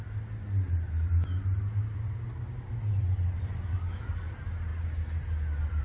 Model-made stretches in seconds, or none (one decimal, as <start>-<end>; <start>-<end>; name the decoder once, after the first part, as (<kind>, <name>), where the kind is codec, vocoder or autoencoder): 3.7-4.3 (codec, DAC)